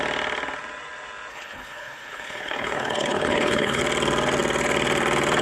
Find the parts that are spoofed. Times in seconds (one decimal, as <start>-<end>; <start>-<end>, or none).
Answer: 1.3-3.8

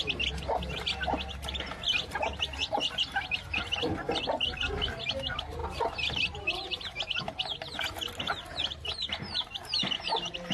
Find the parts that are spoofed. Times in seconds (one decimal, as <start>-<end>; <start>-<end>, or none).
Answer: none

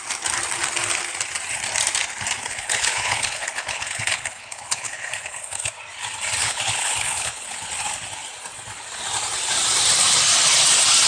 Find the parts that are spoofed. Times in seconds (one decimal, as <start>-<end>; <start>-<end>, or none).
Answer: 2.4-5.7; 6.4-7.7

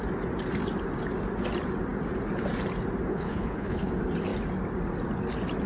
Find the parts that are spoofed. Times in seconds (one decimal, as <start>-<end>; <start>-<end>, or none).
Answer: 3.1-3.9

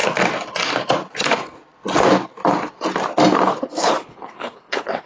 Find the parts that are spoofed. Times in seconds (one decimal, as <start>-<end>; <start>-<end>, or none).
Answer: 3.5-5.1

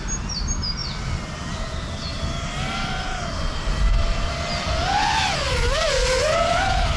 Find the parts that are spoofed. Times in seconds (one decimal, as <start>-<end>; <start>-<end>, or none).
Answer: none